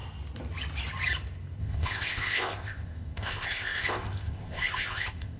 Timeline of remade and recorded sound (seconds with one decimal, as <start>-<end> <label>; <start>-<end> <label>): 0.0-1.6 recorded; 1.6-5.4 remade